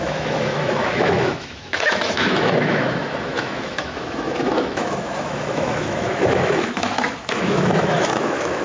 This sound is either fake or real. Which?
fake